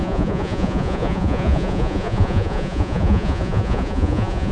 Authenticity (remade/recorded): remade